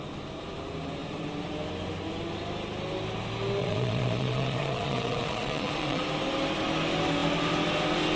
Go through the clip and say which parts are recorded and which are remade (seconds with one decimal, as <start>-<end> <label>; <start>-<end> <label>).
0.0-3.6 recorded; 3.6-6.0 remade; 6.0-8.2 recorded